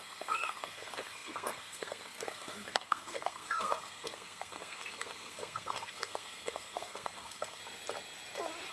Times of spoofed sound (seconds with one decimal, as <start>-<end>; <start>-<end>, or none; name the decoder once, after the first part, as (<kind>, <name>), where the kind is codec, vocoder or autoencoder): 0.0-7.6 (codec, SNAC)